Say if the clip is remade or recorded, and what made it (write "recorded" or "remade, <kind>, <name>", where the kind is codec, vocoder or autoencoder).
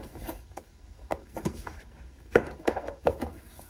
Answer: remade, codec, SNAC